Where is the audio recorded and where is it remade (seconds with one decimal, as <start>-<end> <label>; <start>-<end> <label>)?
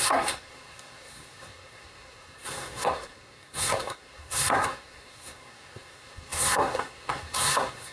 0.0-7.9 remade